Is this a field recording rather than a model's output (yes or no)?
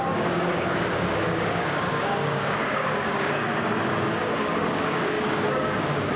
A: no